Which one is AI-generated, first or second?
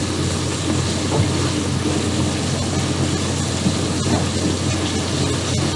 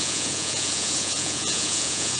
second